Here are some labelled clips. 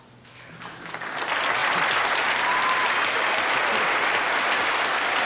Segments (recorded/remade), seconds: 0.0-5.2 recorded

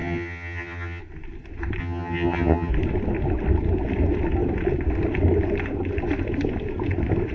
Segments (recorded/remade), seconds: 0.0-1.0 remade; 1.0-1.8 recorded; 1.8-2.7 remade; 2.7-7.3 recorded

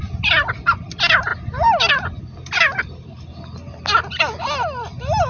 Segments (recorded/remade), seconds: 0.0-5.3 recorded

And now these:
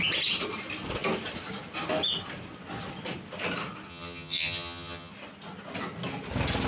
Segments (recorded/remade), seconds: 0.0-3.9 recorded; 3.9-5.1 remade; 5.1-6.7 recorded

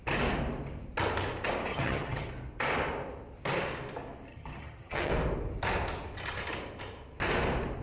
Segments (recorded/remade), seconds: 0.0-1.7 recorded; 1.7-2.3 remade; 2.3-4.3 recorded; 4.3-5.1 remade; 5.1-7.8 recorded

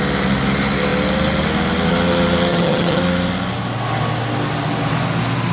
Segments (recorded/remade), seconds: 0.0-2.5 recorded; 2.5-3.0 remade; 3.0-5.5 recorded

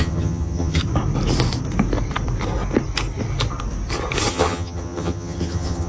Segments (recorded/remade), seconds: 0.0-0.8 remade; 0.8-4.3 recorded; 4.3-5.9 remade

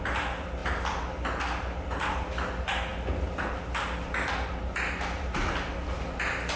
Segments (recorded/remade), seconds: 0.0-6.6 recorded